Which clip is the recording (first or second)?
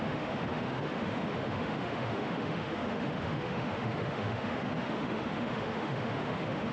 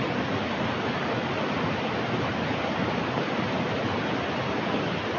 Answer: second